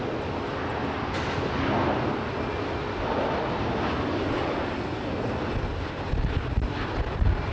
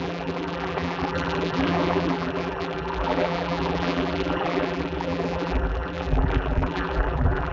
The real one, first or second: first